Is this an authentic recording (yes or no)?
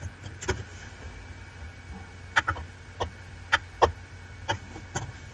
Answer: yes